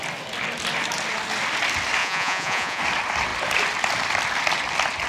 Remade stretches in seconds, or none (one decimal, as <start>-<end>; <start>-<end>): 2.0-2.8